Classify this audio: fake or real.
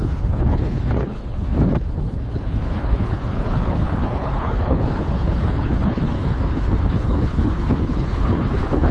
fake